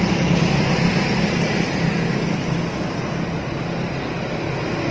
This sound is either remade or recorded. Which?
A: recorded